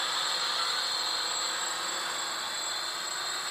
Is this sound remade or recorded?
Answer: recorded